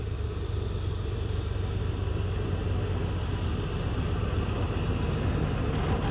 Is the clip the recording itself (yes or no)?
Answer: yes